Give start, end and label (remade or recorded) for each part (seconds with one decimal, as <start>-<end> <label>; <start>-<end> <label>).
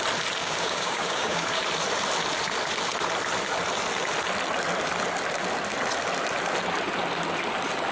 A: 0.0-0.4 recorded; 0.4-1.6 remade; 1.6-7.9 recorded